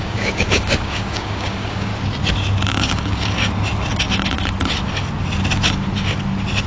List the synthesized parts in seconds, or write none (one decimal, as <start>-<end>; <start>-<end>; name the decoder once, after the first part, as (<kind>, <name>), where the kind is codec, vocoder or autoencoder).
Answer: 0.0-1.9 (codec, DAC); 2.7-3.4